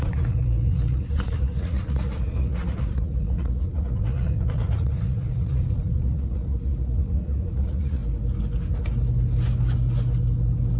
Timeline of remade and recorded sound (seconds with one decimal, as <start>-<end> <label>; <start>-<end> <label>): 0.0-8.0 remade; 8.0-10.8 recorded